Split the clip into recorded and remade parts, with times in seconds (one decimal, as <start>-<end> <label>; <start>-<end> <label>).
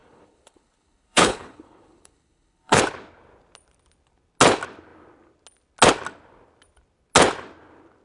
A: 0.0-2.8 remade; 2.8-8.0 recorded